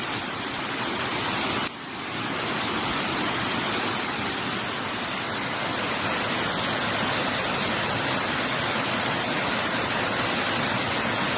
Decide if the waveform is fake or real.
real